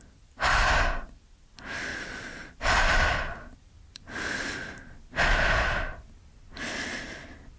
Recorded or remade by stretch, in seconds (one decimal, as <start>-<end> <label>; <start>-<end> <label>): 0.0-1.9 recorded; 1.9-2.5 remade; 2.5-7.6 recorded